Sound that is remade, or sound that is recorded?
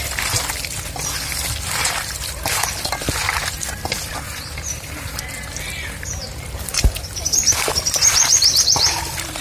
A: remade